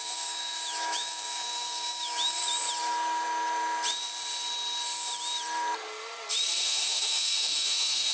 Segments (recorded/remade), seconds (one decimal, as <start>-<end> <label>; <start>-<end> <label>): 0.0-2.4 remade; 2.4-6.6 recorded; 6.6-8.1 remade